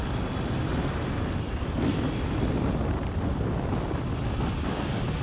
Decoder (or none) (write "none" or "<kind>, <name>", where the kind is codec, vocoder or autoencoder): none